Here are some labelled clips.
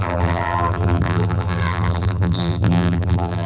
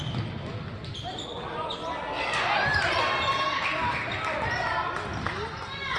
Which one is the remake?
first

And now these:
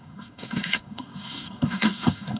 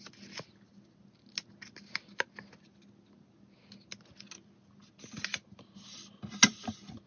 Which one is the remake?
first